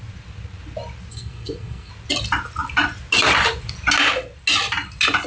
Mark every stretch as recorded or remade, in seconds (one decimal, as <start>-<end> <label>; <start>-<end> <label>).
0.0-1.1 recorded; 1.1-1.9 remade; 1.9-5.3 recorded